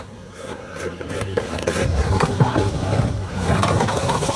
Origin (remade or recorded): remade